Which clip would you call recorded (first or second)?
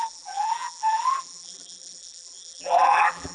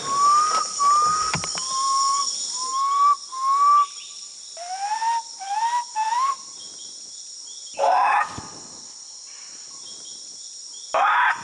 second